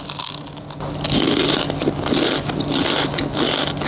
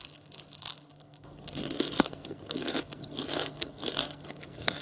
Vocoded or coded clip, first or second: second